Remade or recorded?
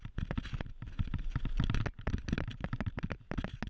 recorded